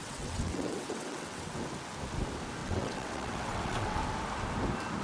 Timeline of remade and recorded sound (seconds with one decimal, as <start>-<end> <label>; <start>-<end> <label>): 0.0-1.5 remade; 1.5-2.6 recorded; 2.6-4.0 remade; 4.0-5.0 recorded